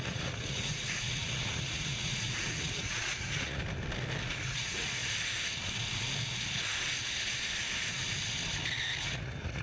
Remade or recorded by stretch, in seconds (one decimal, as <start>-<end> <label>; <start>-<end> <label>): 0.0-3.6 remade; 3.6-4.2 recorded; 4.2-5.0 remade; 5.0-9.0 recorded; 9.0-9.6 remade